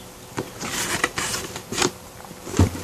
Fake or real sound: fake